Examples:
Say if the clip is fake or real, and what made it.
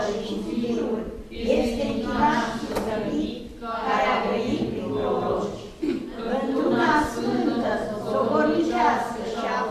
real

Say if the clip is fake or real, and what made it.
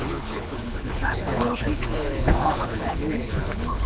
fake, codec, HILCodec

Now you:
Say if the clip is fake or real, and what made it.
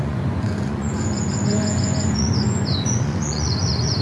fake, vocoder, Vocos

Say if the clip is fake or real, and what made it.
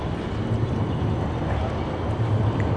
real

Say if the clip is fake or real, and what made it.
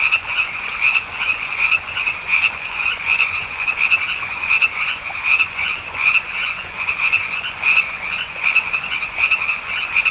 fake, vocoder, Vocos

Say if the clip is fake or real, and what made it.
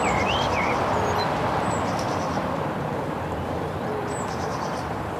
real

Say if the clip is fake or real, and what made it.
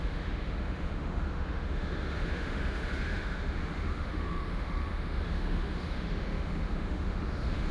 fake, autoencoder, DAC-VAE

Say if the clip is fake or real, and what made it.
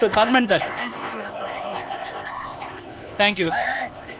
fake, codec, ZipCodec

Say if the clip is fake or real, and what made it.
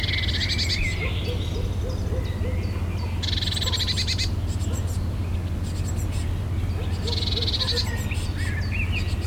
real